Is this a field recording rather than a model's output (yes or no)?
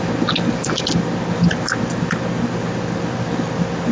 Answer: yes